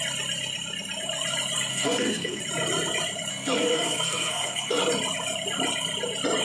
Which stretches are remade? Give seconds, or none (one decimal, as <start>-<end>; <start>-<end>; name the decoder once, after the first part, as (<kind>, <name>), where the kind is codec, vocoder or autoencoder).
1.7-2.4 (codec, SNAC); 3.3-4.8